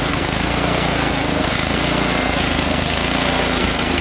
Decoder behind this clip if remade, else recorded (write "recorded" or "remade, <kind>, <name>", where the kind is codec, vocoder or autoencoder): remade, codec, SNAC